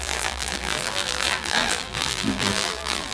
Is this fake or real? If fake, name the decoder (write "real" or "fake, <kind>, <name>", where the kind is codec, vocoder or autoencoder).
fake, vocoder, BigVGAN v2